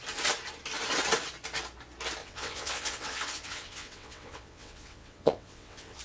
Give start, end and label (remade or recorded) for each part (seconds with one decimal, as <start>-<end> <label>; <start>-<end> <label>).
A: 0.0-2.2 recorded; 2.2-6.0 remade